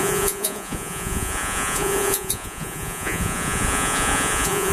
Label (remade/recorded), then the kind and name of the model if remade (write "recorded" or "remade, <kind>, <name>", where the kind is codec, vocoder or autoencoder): remade, vocoder, Vocos